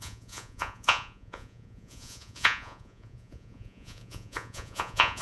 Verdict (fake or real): fake